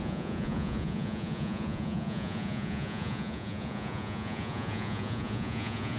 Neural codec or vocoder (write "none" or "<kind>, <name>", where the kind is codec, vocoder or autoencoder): vocoder, Vocos